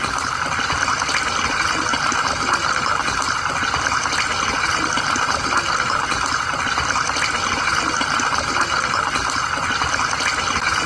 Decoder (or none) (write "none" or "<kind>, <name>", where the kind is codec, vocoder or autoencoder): none